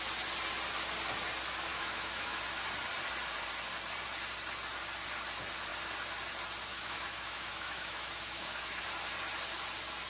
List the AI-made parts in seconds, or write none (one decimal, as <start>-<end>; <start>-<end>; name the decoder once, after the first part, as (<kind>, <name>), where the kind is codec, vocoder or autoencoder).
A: 1.7-2.4 (autoencoder, DAC-VAE); 6.7-8.8